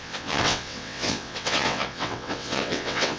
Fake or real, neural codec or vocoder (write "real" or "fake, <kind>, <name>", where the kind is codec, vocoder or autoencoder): fake, vocoder, WaveNeXt